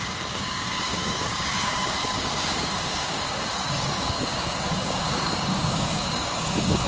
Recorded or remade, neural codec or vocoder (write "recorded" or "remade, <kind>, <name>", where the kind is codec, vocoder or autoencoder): remade, codec, DAC